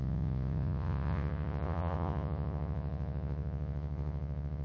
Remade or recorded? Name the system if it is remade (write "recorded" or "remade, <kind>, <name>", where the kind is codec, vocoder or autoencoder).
remade, vocoder, Vocos